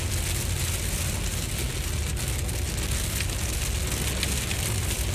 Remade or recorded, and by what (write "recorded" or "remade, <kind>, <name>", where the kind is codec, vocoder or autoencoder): recorded